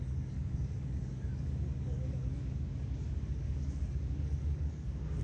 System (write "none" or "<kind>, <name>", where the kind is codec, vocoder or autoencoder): codec, DAC